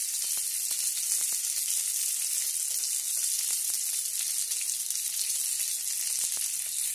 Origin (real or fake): real